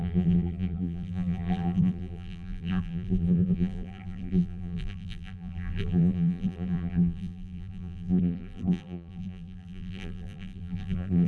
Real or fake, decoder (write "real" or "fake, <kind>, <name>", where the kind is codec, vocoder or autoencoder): fake, vocoder, BigVGAN v2